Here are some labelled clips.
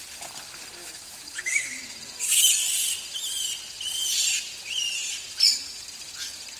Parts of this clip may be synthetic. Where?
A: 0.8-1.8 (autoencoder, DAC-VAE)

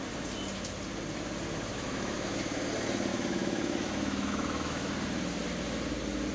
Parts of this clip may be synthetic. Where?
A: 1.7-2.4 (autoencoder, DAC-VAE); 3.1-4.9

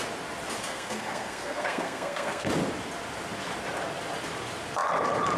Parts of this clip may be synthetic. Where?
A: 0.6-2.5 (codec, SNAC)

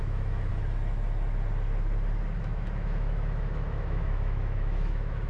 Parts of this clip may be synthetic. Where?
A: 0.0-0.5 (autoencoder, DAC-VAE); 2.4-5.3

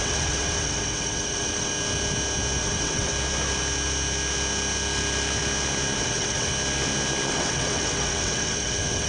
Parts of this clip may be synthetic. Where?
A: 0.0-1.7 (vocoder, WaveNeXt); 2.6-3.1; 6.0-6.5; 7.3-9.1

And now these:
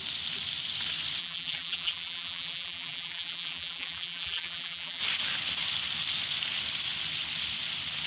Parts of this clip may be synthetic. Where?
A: 1.2-5.0 (vocoder, BigVGAN v2)

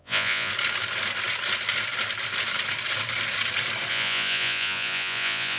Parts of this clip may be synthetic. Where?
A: 0.0-0.5 (vocoder, Vocos); 3.9-5.6